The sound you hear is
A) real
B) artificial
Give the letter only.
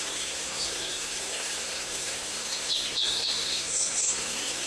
B